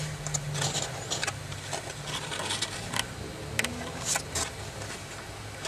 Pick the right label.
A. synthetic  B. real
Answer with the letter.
B